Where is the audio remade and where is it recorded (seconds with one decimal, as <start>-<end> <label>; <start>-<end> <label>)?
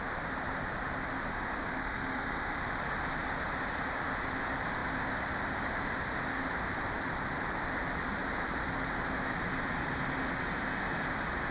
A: 0.0-1.3 recorded; 1.3-2.8 remade; 2.8-11.5 recorded